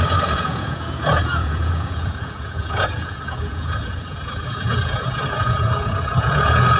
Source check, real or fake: fake